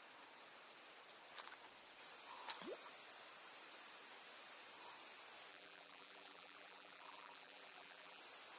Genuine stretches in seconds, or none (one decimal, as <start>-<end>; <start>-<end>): 0.0-5.5; 8.2-8.6